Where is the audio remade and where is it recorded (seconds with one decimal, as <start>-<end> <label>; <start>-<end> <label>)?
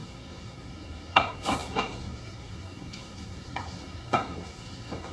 0.0-5.1 remade